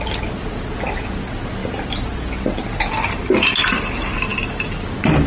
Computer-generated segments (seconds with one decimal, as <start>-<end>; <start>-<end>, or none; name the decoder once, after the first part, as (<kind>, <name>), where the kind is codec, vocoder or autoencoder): none

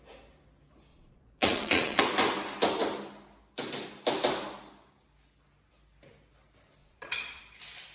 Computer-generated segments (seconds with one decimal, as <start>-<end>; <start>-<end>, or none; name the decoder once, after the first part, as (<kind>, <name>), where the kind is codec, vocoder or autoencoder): 0.9-2.0 (vocoder, Vocos); 6.8-7.4

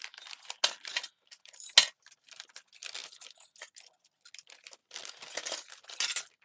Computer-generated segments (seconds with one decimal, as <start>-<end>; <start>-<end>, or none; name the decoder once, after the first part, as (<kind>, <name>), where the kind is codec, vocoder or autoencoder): none

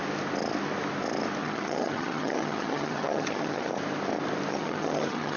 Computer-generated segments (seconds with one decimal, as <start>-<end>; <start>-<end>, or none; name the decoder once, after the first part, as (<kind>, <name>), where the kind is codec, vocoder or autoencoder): 1.4-3.7 (vocoder, HiFi-GAN); 4.5-5.4

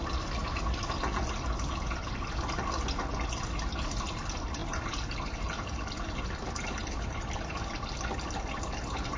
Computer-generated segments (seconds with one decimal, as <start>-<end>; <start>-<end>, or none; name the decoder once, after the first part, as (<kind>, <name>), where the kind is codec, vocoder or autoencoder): none

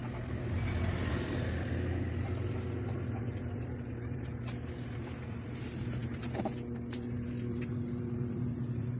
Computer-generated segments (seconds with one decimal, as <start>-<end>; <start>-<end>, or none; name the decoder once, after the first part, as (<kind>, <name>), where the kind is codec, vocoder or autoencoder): none

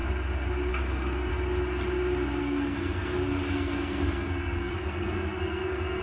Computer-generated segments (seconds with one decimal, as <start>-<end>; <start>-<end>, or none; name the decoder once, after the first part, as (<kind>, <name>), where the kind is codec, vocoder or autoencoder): 0.7-1.3 (codec, SNAC); 2.4-6.0